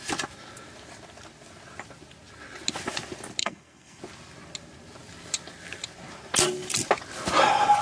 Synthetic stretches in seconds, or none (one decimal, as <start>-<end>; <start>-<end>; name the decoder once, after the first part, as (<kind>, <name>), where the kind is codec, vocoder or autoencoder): 3.4-4.0 (codec, SNAC)